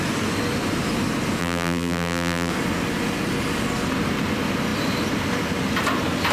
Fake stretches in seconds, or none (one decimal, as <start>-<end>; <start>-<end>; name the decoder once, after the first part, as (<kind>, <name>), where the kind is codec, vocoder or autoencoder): 1.4-2.5 (vocoder, BigVGAN v2)